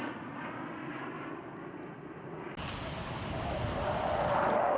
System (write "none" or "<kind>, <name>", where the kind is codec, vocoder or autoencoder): none